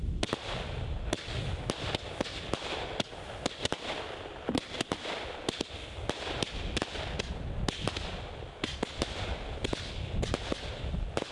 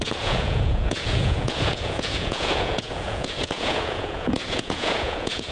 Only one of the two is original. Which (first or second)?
first